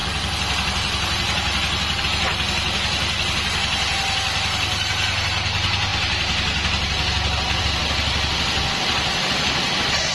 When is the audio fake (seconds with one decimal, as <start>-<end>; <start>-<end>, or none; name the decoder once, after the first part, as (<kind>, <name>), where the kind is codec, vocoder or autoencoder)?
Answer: 0.0-2.0 (vocoder, BigVGAN v2)